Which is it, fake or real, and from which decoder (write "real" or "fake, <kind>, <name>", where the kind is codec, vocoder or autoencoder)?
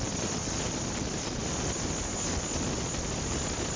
real